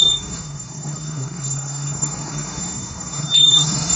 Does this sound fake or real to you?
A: fake